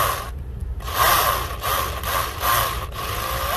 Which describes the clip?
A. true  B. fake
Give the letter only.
B